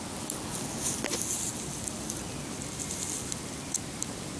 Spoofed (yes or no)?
no